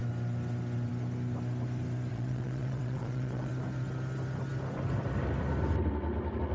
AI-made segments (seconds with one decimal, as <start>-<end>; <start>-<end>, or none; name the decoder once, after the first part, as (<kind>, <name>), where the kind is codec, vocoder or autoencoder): 2.1-3.5 (vocoder, Vocos)